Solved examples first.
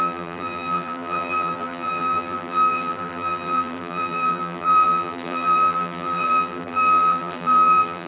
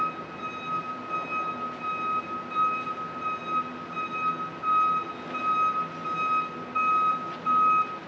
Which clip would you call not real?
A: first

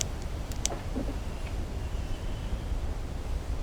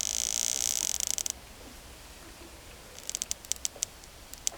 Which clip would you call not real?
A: first